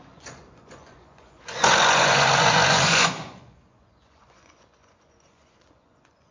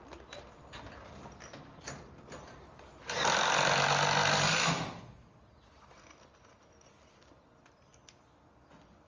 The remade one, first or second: first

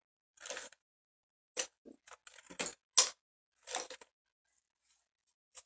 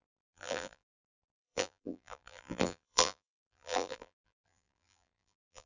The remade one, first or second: second